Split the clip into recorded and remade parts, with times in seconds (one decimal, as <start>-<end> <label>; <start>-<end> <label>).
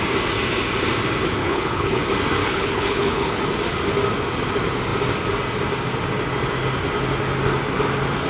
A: 0.0-1.4 recorded; 1.4-2.0 remade; 2.0-2.4 recorded; 2.4-3.4 remade; 3.4-8.3 recorded